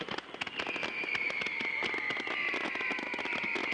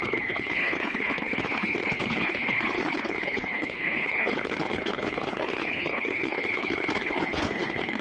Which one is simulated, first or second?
second